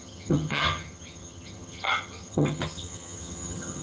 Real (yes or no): no